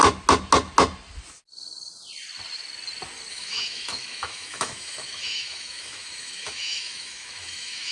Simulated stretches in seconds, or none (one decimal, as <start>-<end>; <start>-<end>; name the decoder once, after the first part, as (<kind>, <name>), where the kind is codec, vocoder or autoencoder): 3.3-7.9 (autoencoder, DAC-VAE)